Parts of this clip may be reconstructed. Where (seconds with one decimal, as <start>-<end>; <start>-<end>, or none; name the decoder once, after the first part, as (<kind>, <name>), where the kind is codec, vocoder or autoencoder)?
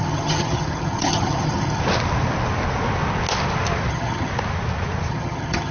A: 0.0-1.8 (vocoder, HiFi-GAN); 3.9-4.3; 5.1-5.7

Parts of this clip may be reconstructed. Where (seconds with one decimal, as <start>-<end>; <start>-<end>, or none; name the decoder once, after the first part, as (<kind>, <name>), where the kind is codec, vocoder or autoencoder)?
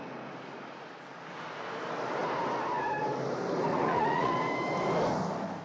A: 3.7-4.3 (vocoder, Vocos)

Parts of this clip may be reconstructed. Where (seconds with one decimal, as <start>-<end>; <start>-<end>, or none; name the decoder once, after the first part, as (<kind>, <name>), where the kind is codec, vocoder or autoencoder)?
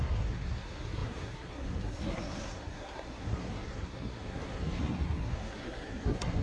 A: 0.0-6.4 (codec, SNAC)